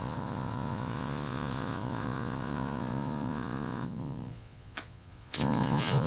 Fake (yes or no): yes